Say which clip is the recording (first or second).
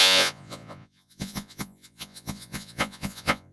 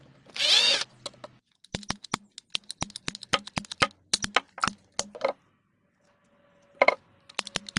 second